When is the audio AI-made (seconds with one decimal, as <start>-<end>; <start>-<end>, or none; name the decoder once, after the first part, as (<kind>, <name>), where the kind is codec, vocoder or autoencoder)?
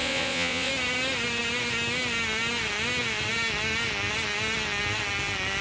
0.0-0.7 (vocoder, Vocos)